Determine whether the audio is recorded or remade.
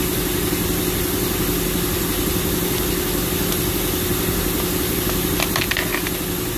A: recorded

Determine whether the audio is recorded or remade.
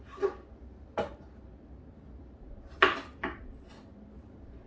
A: recorded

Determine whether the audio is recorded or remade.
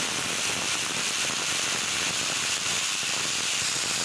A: recorded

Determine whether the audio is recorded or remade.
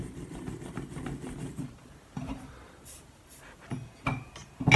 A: recorded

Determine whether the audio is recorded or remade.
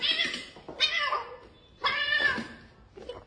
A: remade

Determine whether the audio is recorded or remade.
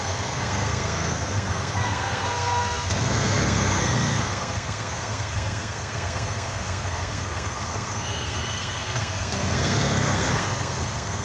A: remade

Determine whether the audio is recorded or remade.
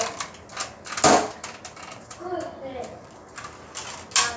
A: recorded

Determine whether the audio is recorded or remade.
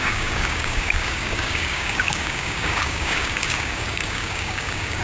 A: remade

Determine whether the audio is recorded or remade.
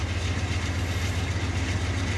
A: recorded